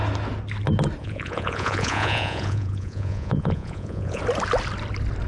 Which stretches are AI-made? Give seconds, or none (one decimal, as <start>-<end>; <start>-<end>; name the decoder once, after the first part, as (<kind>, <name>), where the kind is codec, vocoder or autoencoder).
1.0-4.2 (vocoder, Vocos)